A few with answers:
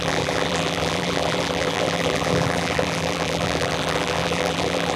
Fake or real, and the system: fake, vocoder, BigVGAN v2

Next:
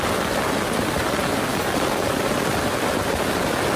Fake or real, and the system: real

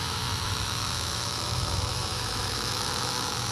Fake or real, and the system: fake, autoencoder, DAC-VAE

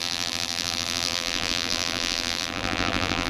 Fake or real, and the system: fake, vocoder, BigVGAN v2